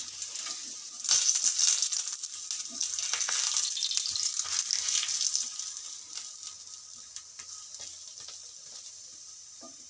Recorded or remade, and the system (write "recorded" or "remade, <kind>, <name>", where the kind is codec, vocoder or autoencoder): recorded